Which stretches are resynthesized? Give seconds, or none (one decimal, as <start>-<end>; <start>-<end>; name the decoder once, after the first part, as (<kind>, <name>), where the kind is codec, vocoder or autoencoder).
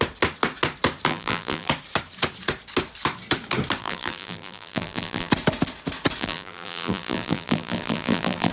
1.1-1.7 (vocoder, BigVGAN v2); 3.8-5.3; 6.2-8.5